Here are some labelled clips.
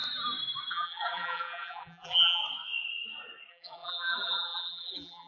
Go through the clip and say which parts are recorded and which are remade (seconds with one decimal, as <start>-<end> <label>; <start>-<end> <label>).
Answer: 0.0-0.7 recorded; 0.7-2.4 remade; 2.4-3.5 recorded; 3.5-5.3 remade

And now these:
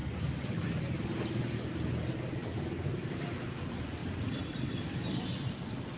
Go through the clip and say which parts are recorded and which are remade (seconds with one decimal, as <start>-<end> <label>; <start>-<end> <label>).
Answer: 0.0-6.0 recorded

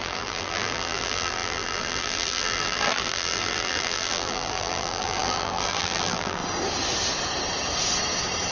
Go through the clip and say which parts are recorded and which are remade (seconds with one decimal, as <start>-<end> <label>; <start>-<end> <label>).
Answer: 0.0-6.4 remade; 6.4-8.5 recorded